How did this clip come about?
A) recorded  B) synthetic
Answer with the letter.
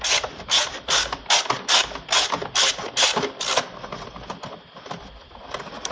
A